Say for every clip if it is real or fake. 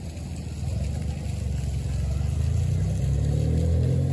real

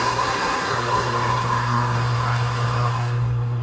fake